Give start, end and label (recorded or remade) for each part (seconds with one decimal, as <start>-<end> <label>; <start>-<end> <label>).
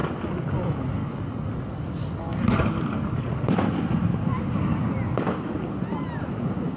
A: 0.0-1.0 recorded; 1.0-1.5 remade; 1.5-6.8 recorded